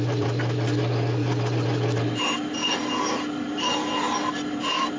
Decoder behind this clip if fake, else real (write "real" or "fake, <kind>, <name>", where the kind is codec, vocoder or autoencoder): real